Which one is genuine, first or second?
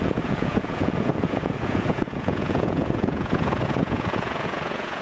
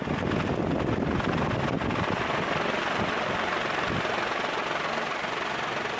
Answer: second